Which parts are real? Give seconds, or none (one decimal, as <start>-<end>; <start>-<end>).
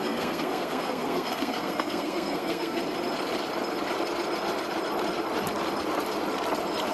2.8-6.9